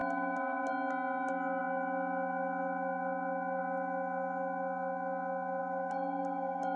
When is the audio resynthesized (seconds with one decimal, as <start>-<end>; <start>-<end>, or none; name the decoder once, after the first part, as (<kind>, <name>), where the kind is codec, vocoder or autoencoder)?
0.0-0.7 (autoencoder, DAC-VAE); 5.6-6.8